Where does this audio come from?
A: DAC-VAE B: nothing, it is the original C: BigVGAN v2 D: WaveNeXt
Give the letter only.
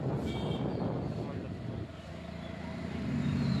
B